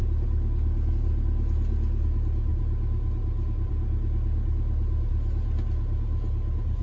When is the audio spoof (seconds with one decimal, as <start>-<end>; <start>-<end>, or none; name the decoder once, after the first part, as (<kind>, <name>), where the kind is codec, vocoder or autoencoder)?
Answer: none